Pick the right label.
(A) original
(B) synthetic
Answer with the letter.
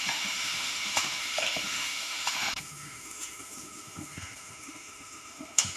B